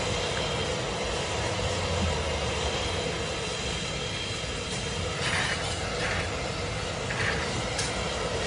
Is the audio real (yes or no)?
yes